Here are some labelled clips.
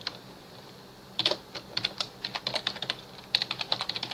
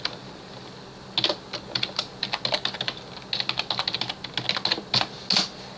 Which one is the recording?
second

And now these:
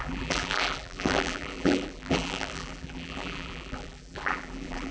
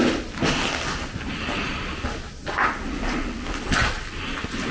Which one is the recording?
second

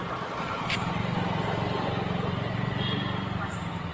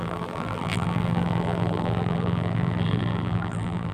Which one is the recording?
first